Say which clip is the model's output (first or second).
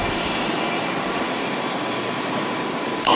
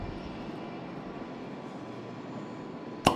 first